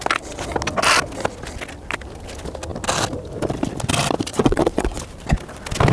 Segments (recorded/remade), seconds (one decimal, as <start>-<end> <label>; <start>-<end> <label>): 0.0-4.3 recorded; 4.3-5.0 remade; 5.0-5.9 recorded